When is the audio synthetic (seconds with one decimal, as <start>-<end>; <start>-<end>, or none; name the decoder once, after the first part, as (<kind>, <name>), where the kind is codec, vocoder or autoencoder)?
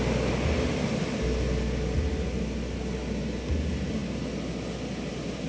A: none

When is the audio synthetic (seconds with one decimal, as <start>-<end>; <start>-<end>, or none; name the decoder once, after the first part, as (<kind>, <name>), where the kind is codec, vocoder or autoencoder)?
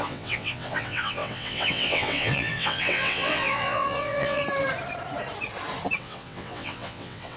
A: 0.0-4.4 (vocoder, WaveNeXt); 6.0-7.4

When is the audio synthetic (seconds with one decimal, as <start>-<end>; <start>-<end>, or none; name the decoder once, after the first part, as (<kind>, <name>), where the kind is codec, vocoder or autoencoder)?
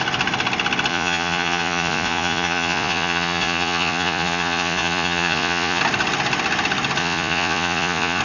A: 0.9-5.8 (vocoder, Vocos); 7.0-8.2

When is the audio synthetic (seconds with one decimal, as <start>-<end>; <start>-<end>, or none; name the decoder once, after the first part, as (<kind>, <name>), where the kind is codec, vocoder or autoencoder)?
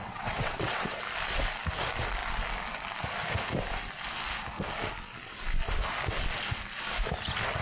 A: 0.0-1.0 (vocoder, WaveNeXt)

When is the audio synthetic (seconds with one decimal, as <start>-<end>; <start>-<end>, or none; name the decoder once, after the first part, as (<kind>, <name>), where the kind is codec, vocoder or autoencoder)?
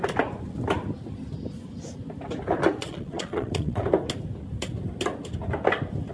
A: 2.8-3.8 (vocoder, Vocos)